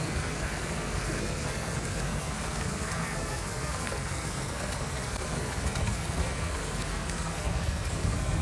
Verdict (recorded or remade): remade